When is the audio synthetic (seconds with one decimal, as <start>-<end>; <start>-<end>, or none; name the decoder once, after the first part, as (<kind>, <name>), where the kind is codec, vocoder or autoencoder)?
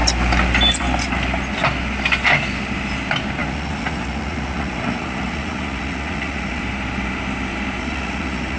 3.4-6.6 (vocoder, Vocos); 7.8-8.6